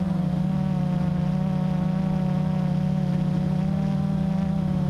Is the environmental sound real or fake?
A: real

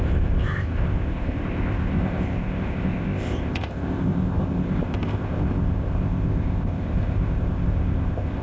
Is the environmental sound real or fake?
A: fake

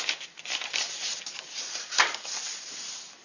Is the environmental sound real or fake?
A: real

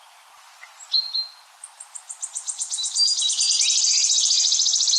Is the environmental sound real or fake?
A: real